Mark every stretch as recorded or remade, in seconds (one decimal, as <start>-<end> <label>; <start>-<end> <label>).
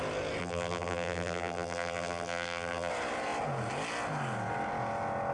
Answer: 0.0-0.4 recorded; 0.4-2.9 remade; 2.9-5.3 recorded